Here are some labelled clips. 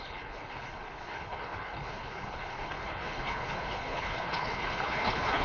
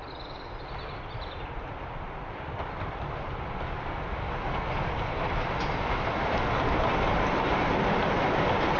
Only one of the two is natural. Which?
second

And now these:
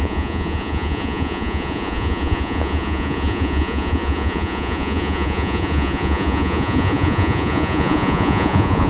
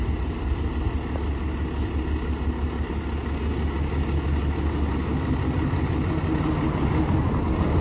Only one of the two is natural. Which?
second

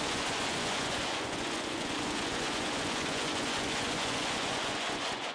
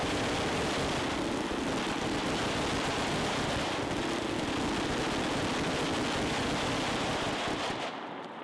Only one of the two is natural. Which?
second